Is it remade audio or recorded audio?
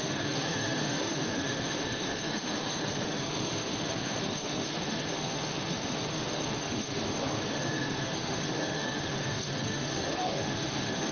remade